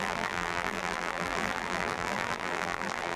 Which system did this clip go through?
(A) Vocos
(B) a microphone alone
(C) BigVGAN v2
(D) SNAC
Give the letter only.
C